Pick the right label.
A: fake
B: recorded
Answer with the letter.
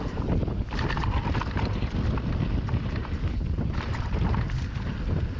B